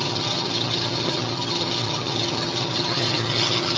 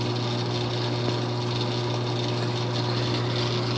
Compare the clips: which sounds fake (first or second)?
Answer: first